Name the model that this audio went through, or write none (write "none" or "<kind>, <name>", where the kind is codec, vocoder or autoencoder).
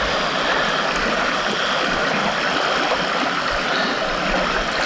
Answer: none